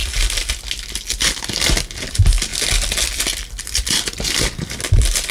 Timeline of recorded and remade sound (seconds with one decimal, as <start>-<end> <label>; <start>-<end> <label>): 0.0-5.3 recorded

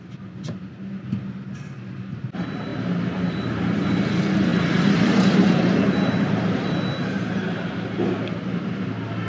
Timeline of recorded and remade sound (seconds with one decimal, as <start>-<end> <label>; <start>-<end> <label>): 0.0-9.3 recorded

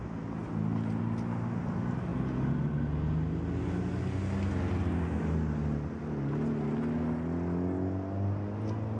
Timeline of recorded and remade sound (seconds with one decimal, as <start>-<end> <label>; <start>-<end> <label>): 0.0-9.0 recorded